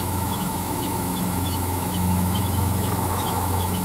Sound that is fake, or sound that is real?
fake